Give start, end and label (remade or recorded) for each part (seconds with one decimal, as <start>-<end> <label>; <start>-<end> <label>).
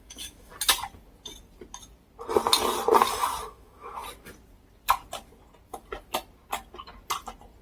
0.0-0.5 remade; 0.5-3.4 recorded; 3.4-4.0 remade; 4.0-7.6 recorded